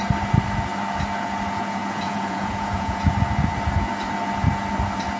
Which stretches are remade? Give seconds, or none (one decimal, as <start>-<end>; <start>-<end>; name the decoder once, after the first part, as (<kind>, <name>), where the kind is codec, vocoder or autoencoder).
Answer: 1.8-3.0 (vocoder, Vocos)